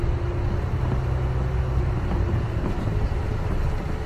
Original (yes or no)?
yes